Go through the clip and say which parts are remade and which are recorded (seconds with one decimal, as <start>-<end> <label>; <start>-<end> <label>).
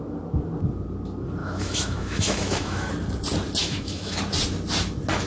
0.0-1.4 recorded; 1.4-2.9 remade; 2.9-3.6 recorded; 3.6-4.2 remade; 4.2-5.3 recorded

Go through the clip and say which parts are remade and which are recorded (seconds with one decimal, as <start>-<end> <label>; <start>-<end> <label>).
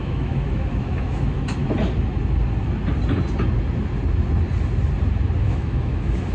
0.0-1.6 remade; 1.6-5.4 recorded; 5.4-6.3 remade